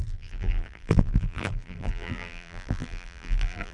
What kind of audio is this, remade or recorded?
remade